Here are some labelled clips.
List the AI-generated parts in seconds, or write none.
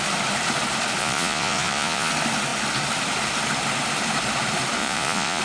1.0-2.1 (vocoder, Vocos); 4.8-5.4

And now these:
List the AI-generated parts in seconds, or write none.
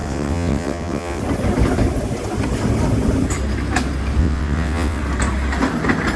0.0-1.2 (vocoder, WaveNeXt); 4.2-5.0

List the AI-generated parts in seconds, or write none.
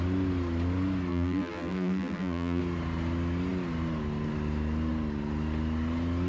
1.1-2.6 (vocoder, BigVGAN v2)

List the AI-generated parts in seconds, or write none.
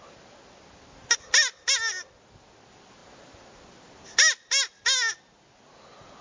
none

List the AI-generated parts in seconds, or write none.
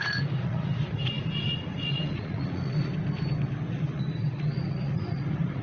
0.0-2.9 (vocoder, Vocos); 3.7-5.6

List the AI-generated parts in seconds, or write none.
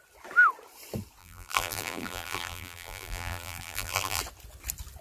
1.2-4.2 (vocoder, BigVGAN v2)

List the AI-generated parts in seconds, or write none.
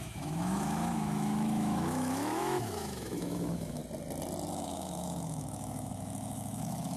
0.0-3.8 (autoencoder, DAC-VAE); 4.5-7.0